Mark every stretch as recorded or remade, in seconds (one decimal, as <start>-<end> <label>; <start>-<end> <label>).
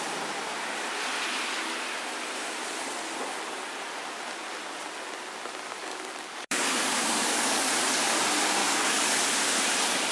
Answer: 0.0-5.8 recorded; 5.8-7.7 remade; 7.7-8.6 recorded; 8.6-9.2 remade; 9.2-10.1 recorded